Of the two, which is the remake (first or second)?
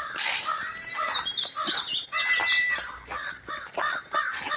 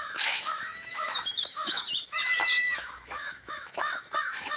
second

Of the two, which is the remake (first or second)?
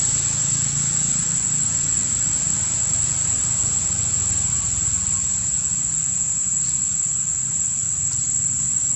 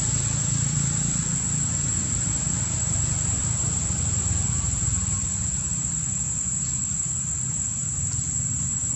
second